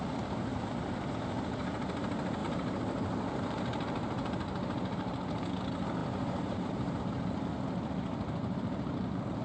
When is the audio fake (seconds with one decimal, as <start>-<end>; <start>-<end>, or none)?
0.5-1.1; 2.4-5.5; 6.0-7.0